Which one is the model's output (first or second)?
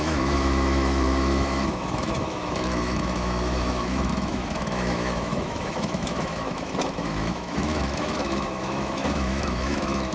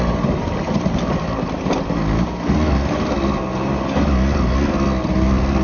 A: first